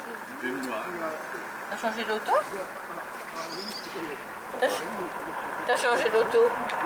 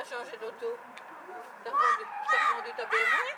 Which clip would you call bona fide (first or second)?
first